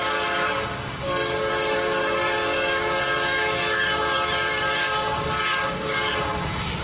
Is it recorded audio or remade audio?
remade